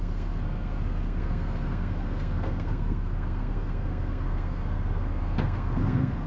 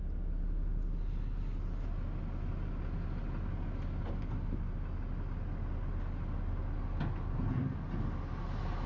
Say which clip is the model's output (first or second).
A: first